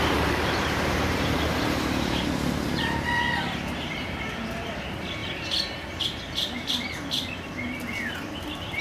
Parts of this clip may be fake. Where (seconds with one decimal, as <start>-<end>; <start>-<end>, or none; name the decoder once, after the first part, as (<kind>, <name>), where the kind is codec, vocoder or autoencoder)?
0.0-2.8 (vocoder, BigVGAN v2)